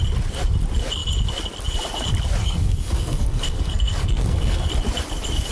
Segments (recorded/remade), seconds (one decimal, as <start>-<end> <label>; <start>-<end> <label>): 0.0-2.4 recorded; 2.4-4.7 remade; 4.7-5.5 recorded